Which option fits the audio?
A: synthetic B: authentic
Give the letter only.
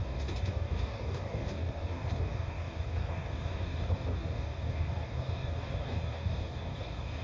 A